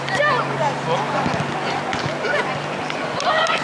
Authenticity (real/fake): real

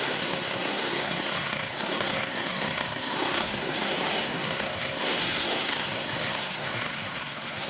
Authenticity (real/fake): fake